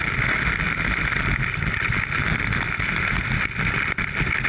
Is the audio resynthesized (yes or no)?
no